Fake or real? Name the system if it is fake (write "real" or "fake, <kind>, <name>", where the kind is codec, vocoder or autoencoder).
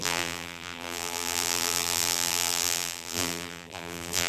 fake, vocoder, BigVGAN v2